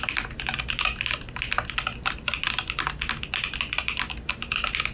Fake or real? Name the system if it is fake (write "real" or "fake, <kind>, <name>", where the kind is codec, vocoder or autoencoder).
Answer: real